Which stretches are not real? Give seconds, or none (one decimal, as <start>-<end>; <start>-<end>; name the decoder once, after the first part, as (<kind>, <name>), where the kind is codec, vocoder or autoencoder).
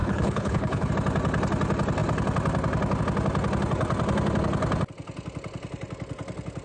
0.0-0.9 (codec, HILCodec)